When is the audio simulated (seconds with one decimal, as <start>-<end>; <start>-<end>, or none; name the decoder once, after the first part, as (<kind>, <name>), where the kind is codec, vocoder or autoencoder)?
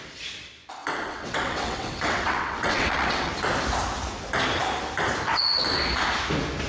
0.8-3.3 (vocoder, WaveNeXt)